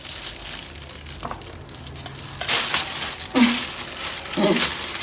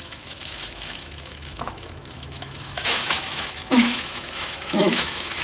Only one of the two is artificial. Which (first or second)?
second